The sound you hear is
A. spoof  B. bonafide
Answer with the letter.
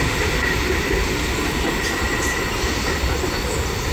B